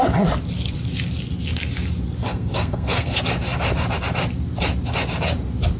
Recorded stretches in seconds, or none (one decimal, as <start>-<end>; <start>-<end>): 0.0-2.2; 3.1-5.8